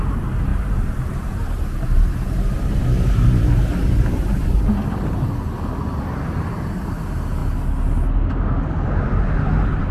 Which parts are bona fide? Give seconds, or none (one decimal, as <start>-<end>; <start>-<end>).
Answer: 0.0-0.5; 4.6-9.9